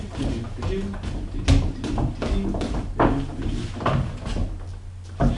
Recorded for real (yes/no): yes